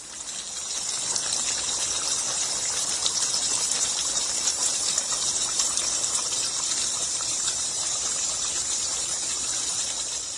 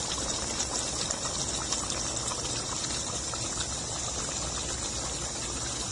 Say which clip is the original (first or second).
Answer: second